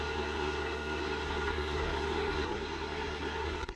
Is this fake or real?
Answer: fake